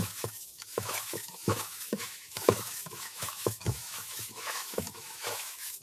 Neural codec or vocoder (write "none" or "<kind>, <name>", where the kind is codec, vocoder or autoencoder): autoencoder, DAC-VAE